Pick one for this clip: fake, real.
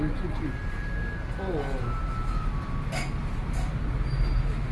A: real